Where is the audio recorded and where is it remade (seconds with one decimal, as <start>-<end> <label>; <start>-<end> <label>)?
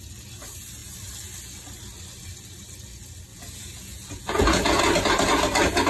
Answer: 0.0-3.3 recorded; 3.3-4.8 remade; 4.8-5.9 recorded